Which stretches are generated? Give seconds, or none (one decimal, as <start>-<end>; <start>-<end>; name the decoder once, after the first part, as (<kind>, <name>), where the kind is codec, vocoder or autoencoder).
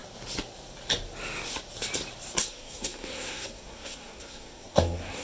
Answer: 2.4-5.2 (codec, SNAC)